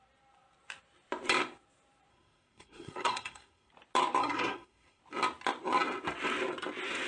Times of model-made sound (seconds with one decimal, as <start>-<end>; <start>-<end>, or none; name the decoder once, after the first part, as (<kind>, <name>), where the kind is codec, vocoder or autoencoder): 2.1-3.7 (codec, SNAC); 4.2-5.0